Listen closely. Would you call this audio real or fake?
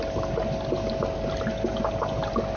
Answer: real